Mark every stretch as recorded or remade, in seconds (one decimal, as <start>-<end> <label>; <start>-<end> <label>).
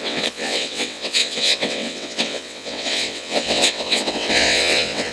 0.0-5.1 remade